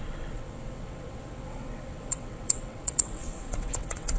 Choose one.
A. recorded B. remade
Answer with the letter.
B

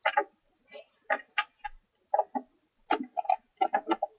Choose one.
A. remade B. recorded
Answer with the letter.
B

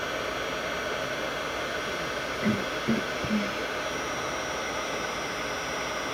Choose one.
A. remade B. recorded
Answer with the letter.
B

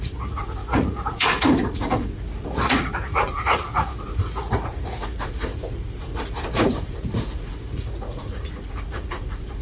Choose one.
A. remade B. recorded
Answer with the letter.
A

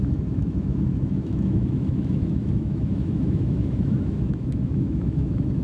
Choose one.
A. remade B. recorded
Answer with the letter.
A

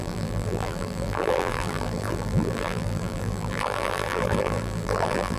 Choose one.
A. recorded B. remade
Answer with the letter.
B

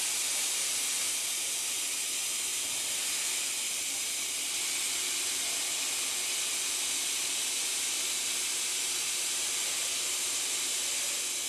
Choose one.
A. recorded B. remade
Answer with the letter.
A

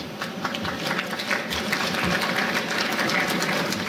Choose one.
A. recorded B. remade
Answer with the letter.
B